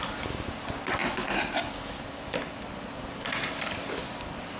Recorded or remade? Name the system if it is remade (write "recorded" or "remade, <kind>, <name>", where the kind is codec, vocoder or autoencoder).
recorded